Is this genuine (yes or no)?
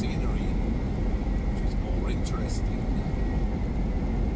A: yes